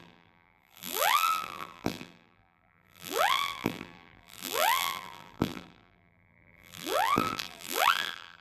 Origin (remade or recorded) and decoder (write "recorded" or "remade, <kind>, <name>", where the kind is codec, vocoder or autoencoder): remade, vocoder, BigVGAN v2